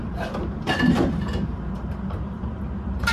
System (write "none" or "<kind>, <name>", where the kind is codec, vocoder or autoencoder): vocoder, BigVGAN v2